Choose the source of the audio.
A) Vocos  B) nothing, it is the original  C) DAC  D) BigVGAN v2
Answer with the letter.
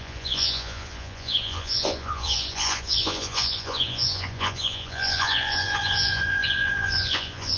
A